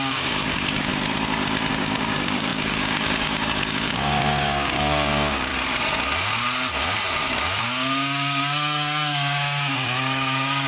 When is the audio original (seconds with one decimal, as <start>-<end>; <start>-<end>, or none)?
0.9-1.7; 5.5-7.6